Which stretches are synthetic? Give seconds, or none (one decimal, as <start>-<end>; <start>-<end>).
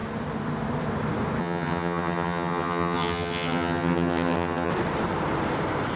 1.4-4.7